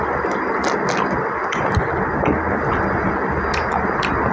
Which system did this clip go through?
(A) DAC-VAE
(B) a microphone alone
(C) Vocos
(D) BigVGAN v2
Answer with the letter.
B